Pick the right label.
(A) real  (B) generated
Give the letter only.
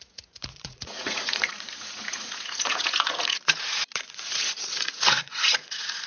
B